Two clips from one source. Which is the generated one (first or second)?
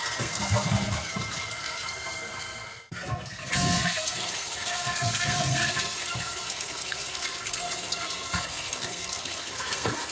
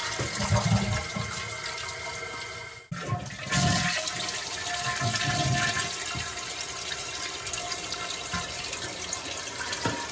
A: first